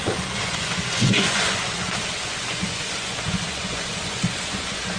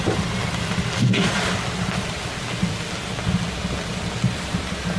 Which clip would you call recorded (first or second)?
second